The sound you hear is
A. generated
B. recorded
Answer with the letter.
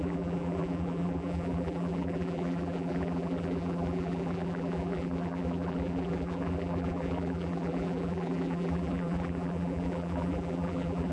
A